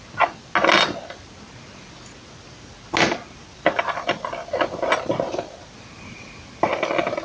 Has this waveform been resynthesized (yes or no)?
no